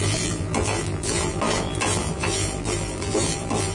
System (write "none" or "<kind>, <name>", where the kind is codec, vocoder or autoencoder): vocoder, BigVGAN v2